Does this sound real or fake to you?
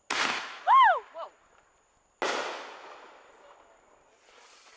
real